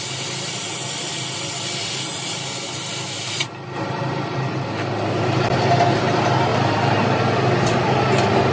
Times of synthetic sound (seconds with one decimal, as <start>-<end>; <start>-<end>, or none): none